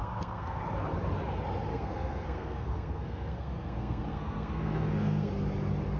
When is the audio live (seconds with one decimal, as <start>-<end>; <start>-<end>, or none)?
0.6-1.7; 5.3-6.0